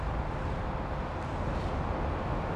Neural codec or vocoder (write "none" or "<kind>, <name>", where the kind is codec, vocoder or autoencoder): none